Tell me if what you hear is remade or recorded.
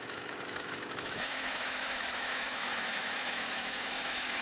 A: remade